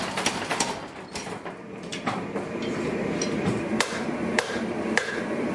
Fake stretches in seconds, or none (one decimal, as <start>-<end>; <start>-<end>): 1.9-5.5